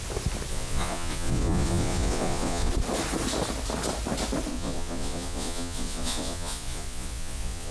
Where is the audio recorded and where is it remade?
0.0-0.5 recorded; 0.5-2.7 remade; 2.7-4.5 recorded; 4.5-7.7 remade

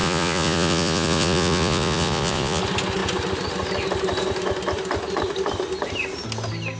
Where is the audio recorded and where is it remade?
0.0-2.6 remade; 2.6-6.8 recorded

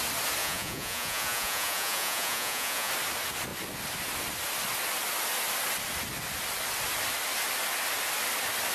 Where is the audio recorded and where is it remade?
0.0-0.4 recorded; 0.4-2.9 remade; 2.9-8.7 recorded

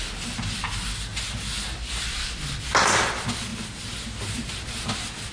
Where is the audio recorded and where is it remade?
0.0-5.3 recorded